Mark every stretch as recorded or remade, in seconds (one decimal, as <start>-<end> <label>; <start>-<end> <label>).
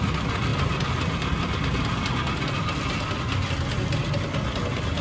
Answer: 0.0-5.0 recorded